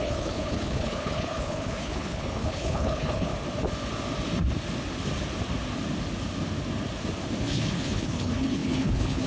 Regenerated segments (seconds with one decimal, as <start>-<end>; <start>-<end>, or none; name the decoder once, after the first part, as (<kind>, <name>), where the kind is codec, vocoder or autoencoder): 0.0-3.3 (codec, HILCodec); 7.4-9.3